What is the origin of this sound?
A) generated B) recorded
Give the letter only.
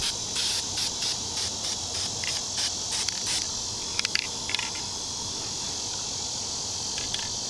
B